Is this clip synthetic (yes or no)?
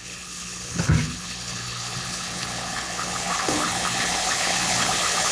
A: yes